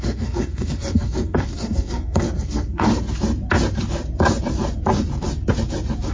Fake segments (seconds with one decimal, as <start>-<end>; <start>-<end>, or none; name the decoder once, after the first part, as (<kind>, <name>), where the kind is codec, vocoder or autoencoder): 0.0-2.9 (codec, SNAC)